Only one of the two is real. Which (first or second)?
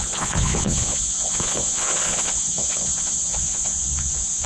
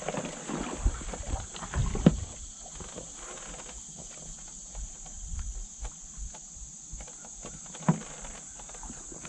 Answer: second